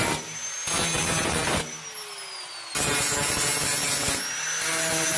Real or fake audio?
real